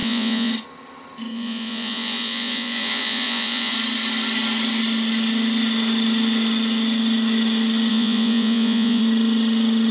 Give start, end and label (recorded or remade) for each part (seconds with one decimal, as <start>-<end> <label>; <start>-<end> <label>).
0.0-0.5 remade; 0.5-1.3 recorded; 1.3-3.7 remade; 3.7-7.9 recorded; 7.9-9.0 remade; 9.0-9.9 recorded